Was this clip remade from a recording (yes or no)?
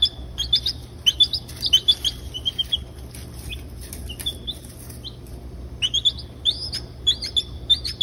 no